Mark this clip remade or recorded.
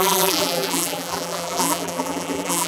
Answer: remade